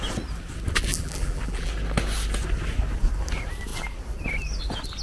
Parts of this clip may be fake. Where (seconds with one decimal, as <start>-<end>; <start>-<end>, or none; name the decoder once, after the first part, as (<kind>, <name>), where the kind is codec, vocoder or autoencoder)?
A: 0.9-1.7 (vocoder, BigVGAN v2)